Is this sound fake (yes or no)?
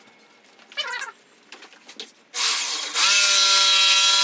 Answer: no